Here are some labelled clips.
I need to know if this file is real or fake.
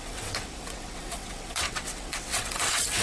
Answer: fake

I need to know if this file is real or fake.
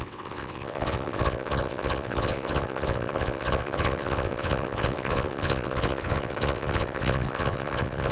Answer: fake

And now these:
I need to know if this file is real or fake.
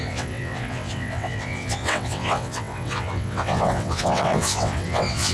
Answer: fake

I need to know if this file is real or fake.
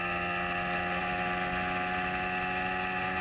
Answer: real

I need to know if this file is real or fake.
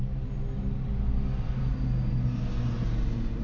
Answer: real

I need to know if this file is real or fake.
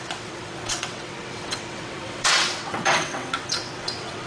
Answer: fake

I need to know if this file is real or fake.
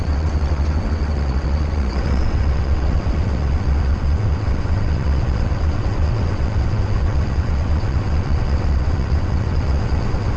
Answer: fake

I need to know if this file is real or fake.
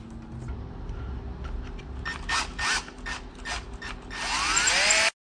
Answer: real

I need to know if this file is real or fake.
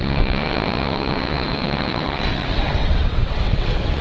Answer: fake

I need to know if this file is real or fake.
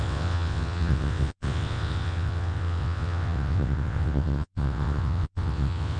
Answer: fake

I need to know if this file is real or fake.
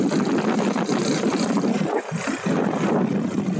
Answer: real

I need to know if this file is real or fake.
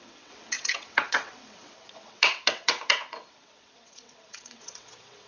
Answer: fake